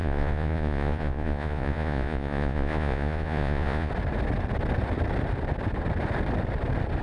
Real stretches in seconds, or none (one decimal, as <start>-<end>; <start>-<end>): 3.9-7.0

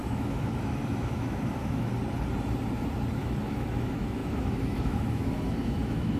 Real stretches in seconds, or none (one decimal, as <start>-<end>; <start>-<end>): 1.9-3.2

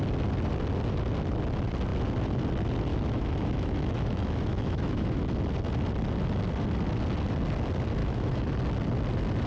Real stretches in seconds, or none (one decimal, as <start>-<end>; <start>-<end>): 0.0-2.9; 5.2-8.0; 8.6-9.5

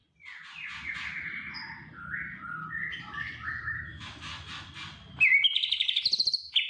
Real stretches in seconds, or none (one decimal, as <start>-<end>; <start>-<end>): 0.0-3.6; 4.3-6.7